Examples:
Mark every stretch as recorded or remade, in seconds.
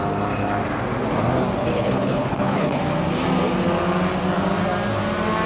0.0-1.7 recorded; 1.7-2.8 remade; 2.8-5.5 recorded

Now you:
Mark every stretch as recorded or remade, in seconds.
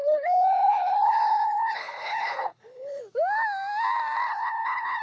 0.0-3.0 remade; 3.0-4.3 recorded; 4.3-5.0 remade